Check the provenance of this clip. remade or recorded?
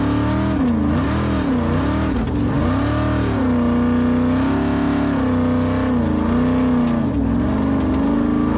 recorded